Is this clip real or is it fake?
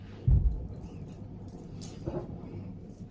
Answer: real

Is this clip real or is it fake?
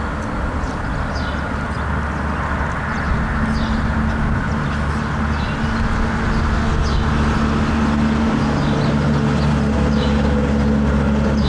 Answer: real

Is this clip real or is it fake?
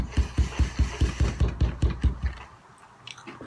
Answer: real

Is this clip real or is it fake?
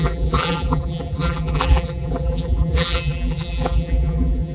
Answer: fake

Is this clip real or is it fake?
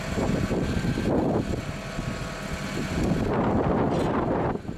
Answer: real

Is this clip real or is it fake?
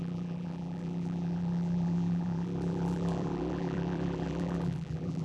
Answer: fake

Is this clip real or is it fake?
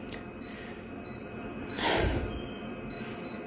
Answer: fake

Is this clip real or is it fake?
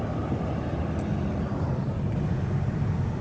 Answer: real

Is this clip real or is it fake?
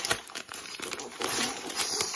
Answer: fake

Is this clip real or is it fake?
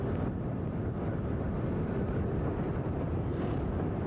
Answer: real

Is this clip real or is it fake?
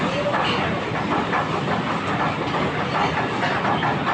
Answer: real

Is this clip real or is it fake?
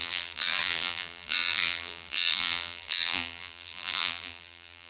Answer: fake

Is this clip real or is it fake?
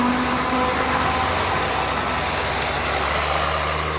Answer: real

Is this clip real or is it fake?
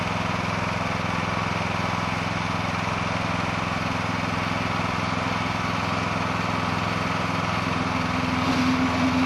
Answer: real